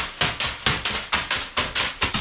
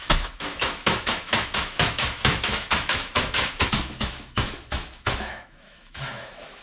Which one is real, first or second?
first